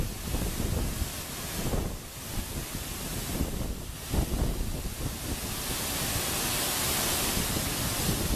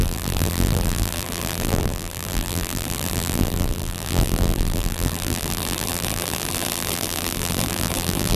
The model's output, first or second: second